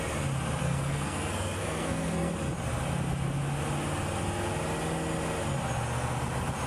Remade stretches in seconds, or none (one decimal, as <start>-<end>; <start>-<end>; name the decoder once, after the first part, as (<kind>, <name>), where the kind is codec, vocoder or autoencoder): 0.6-2.3 (codec, SNAC)